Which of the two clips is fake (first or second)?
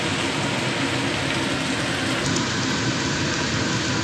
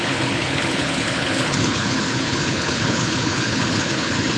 second